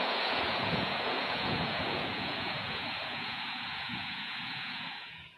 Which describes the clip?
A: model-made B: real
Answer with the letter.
A